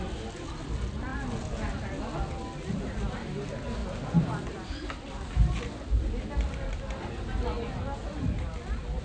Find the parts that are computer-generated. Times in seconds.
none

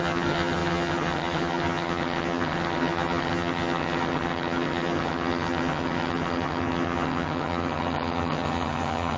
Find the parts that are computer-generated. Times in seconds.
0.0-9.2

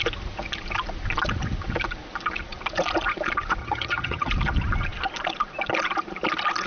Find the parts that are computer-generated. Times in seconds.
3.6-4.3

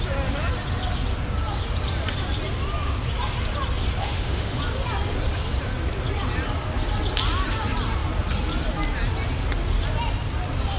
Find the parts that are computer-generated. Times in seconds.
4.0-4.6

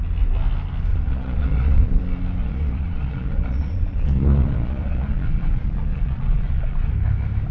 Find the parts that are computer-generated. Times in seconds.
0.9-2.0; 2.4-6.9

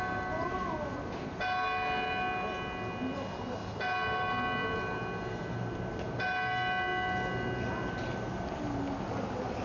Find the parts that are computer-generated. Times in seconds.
none

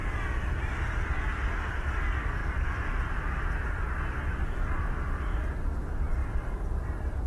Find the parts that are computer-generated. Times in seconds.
0.0-7.3

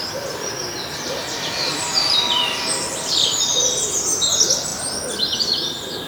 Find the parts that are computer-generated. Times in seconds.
0.0-4.7; 5.4-6.1